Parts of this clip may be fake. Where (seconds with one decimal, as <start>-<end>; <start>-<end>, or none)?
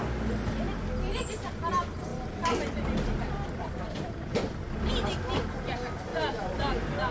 2.1-4.9; 6.1-7.1